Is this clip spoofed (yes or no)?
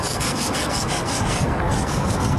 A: yes